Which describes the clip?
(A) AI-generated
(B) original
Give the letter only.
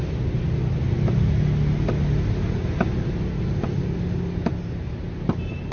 B